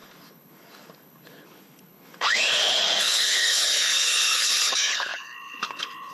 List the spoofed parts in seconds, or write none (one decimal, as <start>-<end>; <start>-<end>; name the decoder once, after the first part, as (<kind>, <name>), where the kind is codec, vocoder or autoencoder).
0.0-6.1 (codec, HILCodec)